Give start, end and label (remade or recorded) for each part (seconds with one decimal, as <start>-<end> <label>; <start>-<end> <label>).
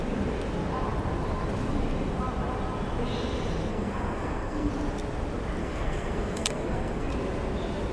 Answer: 0.0-3.7 recorded; 3.7-4.7 remade; 4.7-5.6 recorded; 5.6-7.1 remade; 7.1-7.9 recorded